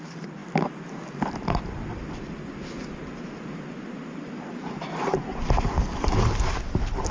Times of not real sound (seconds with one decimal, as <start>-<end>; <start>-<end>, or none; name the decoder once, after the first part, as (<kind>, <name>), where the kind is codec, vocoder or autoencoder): none